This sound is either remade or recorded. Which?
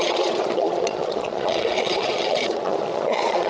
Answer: remade